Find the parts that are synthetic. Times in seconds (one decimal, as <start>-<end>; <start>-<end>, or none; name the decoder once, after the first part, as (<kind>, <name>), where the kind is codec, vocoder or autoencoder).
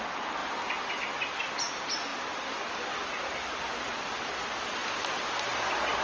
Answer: none